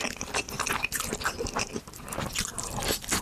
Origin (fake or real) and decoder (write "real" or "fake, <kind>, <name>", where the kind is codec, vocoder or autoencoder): real